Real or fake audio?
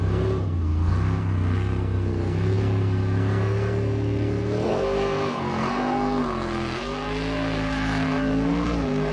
fake